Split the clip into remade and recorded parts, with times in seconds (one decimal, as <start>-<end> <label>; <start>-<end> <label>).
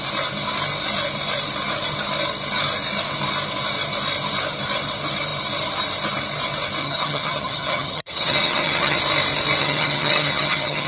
0.0-6.8 recorded; 6.8-9.0 remade; 9.0-9.6 recorded; 9.6-10.9 remade